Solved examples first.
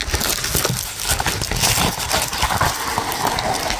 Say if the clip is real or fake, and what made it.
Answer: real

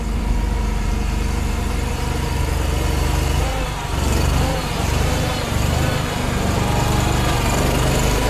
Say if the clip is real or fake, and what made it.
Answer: fake, vocoder, BigVGAN v2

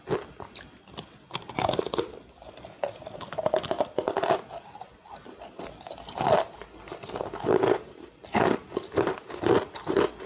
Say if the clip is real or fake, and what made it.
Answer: real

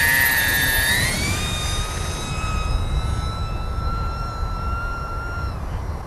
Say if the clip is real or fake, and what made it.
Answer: fake, vocoder, BigVGAN v2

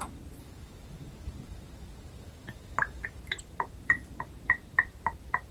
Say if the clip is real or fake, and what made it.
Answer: fake, vocoder, BigVGAN v2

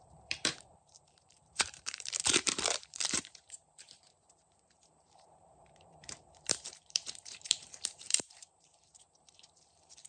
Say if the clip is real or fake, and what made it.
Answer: fake, vocoder, BigVGAN v2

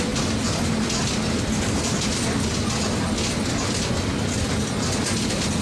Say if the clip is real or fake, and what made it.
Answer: real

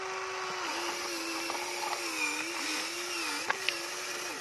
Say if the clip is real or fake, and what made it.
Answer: real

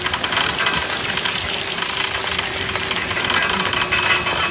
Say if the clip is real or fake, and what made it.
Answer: real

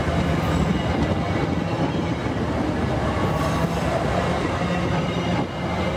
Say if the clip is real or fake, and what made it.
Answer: real